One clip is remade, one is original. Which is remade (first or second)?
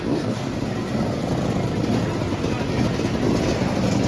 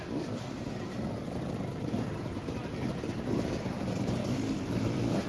second